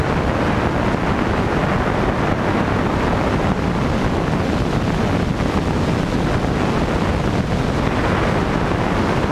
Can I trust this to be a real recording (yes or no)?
yes